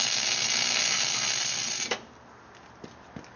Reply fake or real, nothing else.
real